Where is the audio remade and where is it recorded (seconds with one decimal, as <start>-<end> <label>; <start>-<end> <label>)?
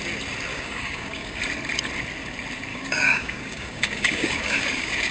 0.0-0.5 recorded; 0.5-1.4 remade; 1.4-2.7 recorded; 2.7-5.1 remade